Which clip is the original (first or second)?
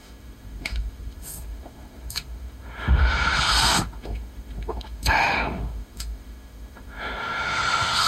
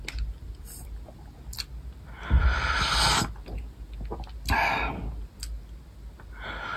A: second